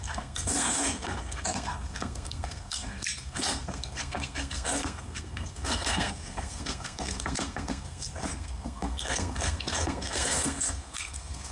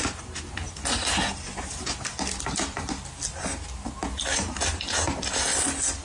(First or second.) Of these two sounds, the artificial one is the first